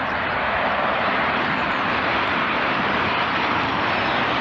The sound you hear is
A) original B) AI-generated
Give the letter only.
B